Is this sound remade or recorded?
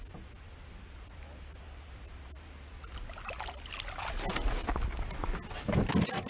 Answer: recorded